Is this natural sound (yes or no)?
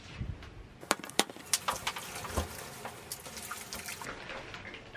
yes